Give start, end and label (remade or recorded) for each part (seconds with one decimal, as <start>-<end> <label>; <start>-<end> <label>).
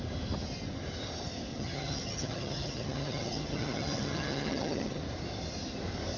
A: 0.0-1.5 recorded; 1.5-5.0 remade; 5.0-6.2 recorded